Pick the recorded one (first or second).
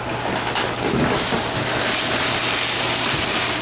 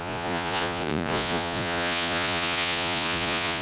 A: first